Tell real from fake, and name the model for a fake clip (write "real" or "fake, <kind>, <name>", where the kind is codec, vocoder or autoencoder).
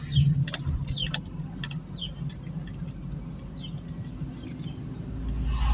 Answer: real